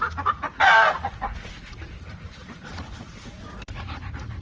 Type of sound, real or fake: fake